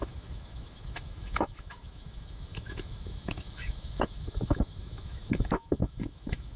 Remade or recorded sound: remade